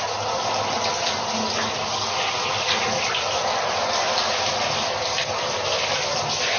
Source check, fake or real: real